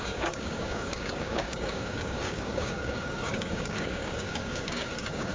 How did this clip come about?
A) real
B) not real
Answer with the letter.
B